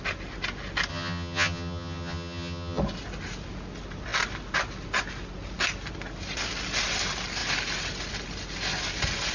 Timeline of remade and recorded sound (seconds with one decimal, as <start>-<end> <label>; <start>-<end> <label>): 0.0-0.9 recorded; 0.9-2.8 remade; 2.8-9.3 recorded